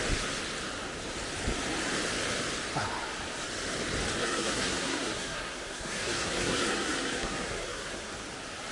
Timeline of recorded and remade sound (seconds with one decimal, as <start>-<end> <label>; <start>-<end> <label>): 0.0-4.2 recorded; 4.2-8.1 remade; 8.1-8.7 recorded